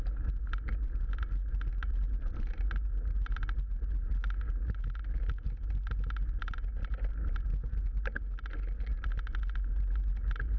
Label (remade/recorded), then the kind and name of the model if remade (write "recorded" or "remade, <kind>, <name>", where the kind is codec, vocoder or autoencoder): recorded